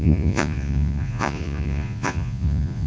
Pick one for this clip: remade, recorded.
remade